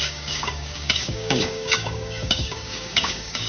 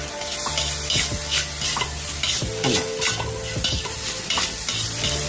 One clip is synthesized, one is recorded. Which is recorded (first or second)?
second